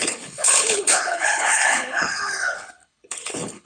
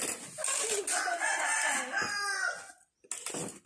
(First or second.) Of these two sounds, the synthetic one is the first